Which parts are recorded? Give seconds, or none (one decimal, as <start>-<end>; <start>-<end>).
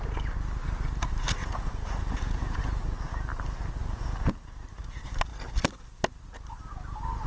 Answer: 0.0-1.4; 2.6-3.8; 4.4-7.3